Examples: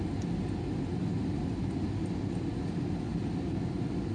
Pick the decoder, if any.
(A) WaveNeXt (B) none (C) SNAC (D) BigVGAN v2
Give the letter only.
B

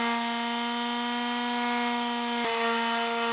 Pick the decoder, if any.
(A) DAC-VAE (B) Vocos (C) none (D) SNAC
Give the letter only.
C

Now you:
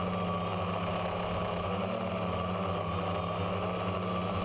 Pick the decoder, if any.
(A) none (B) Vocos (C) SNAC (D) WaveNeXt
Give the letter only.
A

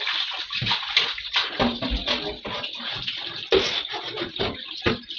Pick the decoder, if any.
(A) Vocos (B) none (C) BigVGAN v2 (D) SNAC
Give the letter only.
B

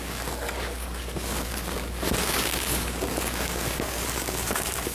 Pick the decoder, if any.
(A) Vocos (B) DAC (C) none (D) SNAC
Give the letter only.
B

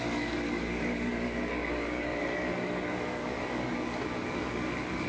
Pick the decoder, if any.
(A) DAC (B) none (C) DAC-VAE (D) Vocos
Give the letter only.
A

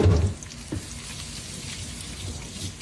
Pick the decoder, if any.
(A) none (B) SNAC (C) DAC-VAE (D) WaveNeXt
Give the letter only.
A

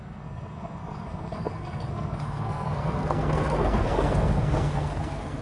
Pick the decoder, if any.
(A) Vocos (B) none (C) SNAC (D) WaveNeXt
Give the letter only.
C